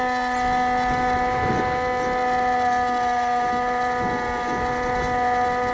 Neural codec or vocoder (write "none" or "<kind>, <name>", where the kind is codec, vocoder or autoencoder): none